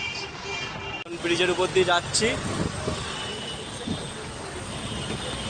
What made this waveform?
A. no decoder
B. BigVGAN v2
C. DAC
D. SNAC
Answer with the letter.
A